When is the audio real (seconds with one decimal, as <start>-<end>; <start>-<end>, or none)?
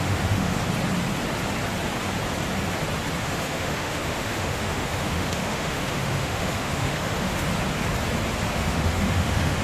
0.6-3.2; 7.5-8.5